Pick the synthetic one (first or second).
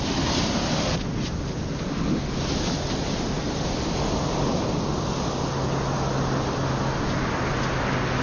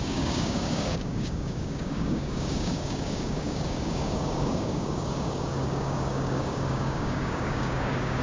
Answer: second